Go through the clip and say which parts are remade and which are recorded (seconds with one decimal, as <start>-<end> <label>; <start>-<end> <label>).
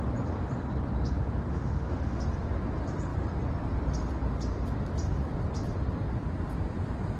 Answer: 0.0-1.5 recorded; 1.5-2.2 remade; 2.2-7.2 recorded